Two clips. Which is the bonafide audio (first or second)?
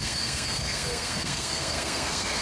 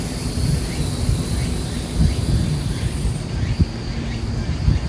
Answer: second